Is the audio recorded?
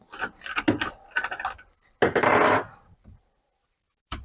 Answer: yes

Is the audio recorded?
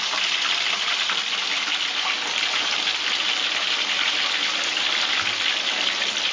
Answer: yes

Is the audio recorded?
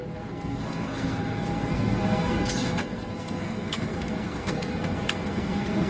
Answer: no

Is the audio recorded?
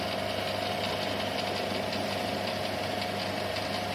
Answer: yes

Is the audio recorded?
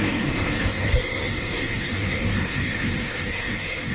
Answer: no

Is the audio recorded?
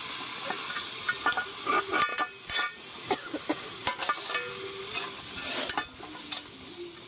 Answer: yes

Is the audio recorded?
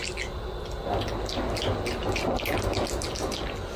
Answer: yes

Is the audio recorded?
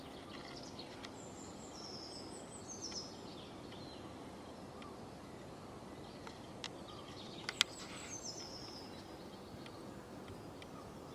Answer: yes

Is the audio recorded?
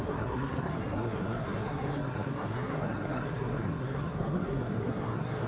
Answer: no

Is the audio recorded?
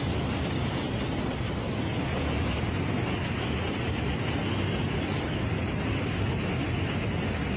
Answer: yes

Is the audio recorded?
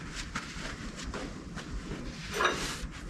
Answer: yes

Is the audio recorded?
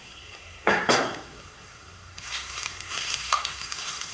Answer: no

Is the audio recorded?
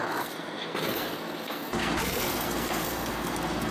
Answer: no